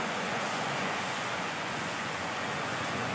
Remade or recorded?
remade